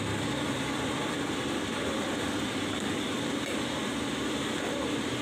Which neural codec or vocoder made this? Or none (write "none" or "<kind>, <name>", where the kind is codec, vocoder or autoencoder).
vocoder, BigVGAN v2